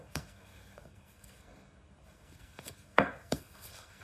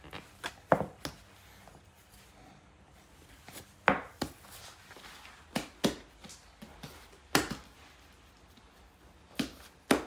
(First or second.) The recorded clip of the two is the second